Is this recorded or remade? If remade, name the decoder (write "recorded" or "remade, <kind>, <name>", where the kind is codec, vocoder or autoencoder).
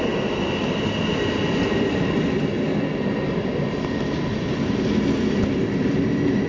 recorded